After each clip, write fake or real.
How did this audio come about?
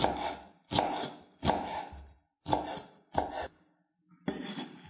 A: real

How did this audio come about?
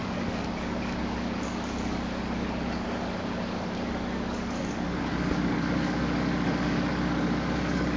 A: fake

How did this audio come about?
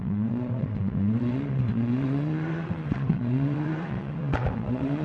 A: fake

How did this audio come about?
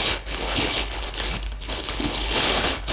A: fake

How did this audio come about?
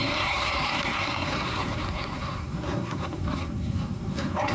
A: fake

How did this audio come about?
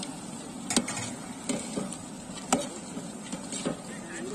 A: real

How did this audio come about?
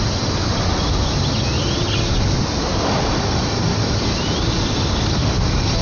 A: real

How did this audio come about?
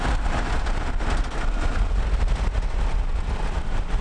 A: real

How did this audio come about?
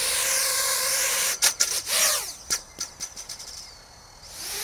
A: real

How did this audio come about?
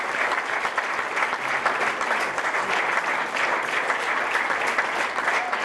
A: real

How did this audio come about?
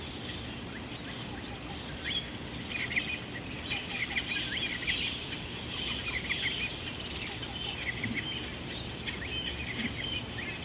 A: real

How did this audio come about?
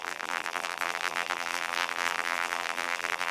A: fake